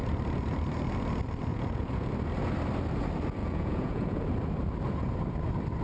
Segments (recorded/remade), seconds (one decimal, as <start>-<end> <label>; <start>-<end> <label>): 0.0-1.5 recorded; 1.5-2.1 remade; 2.1-3.4 recorded; 3.4-4.2 remade; 4.2-5.8 recorded